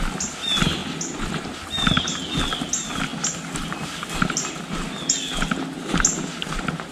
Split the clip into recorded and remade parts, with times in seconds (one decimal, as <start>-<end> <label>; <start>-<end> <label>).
0.0-6.9 recorded